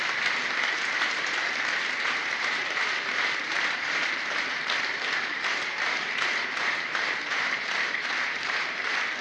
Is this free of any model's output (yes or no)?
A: no